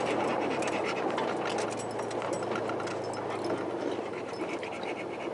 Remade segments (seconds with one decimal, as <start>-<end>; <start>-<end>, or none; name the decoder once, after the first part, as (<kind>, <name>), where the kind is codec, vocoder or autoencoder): 0.0-0.8 (vocoder, BigVGAN v2); 4.0-5.3